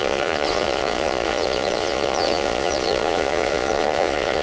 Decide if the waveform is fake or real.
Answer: fake